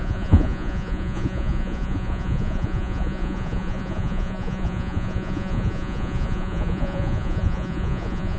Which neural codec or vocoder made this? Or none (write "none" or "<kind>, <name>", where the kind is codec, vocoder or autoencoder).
vocoder, Vocos